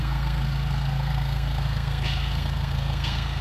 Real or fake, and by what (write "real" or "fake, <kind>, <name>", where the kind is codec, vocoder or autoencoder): fake, codec, SNAC